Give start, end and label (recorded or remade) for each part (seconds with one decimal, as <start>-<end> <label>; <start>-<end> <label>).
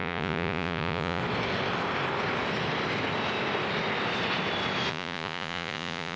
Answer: 0.0-1.2 remade; 1.2-4.9 recorded; 4.9-6.2 remade